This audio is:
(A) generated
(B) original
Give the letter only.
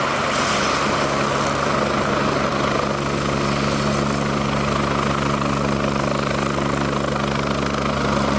B